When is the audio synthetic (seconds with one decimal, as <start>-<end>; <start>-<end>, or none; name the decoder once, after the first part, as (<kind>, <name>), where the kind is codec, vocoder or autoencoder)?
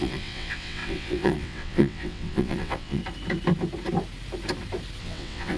0.0-3.0 (vocoder, WaveNeXt); 5.0-5.6